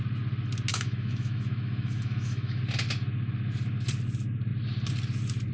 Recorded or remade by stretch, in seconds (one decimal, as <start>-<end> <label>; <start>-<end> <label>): 0.0-0.7 recorded; 0.7-2.6 remade; 2.6-5.5 recorded